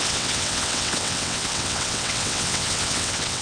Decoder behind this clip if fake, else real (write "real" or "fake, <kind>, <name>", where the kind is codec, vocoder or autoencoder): fake, vocoder, WaveNeXt